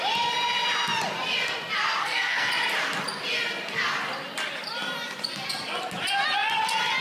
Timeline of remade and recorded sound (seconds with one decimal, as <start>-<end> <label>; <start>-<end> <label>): 0.0-2.0 recorded; 2.0-2.5 remade; 2.5-7.0 recorded